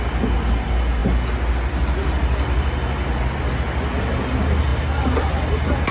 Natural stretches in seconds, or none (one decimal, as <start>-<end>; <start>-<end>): 0.0-5.9